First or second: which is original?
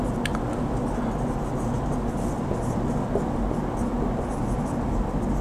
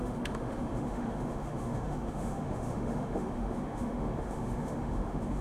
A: first